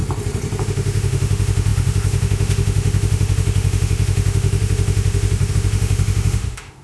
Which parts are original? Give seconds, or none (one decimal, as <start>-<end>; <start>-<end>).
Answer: 0.0-0.6